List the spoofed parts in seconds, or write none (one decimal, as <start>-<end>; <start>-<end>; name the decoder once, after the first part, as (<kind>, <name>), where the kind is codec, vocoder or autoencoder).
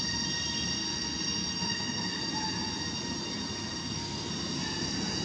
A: 0.8-2.2 (codec, SNAC); 3.8-4.3